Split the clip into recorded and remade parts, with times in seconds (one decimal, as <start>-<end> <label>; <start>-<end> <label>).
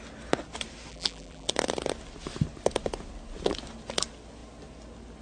0.0-0.9 recorded; 0.9-1.5 remade; 1.5-5.2 recorded